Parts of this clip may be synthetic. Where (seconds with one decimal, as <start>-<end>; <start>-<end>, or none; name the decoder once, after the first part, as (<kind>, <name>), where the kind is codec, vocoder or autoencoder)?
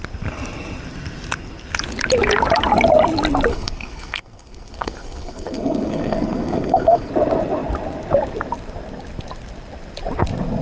3.5-7.1 (codec, SNAC)